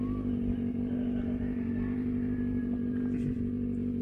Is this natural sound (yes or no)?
yes